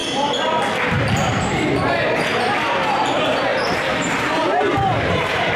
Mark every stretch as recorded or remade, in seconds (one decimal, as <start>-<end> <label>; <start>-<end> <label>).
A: 0.0-0.9 recorded; 0.9-2.3 remade; 2.3-3.0 recorded; 3.0-5.6 remade